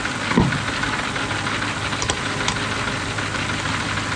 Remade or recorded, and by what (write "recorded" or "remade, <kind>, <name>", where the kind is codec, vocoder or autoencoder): recorded